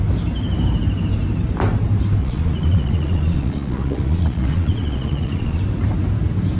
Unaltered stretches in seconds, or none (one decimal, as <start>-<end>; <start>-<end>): 0.0-2.2; 5.6-6.6